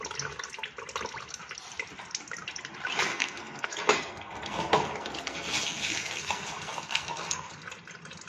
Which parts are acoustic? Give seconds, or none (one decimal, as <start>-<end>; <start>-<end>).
0.0-3.1; 7.6-8.3